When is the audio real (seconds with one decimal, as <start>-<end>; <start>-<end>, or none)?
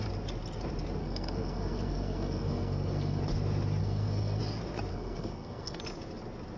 0.0-1.0; 3.2-3.8; 4.4-4.9; 5.8-6.6